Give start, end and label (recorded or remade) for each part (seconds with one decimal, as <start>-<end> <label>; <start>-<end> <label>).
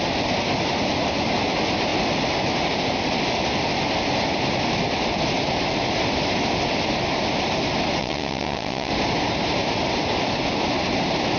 0.0-8.0 recorded; 8.0-8.9 remade; 8.9-11.4 recorded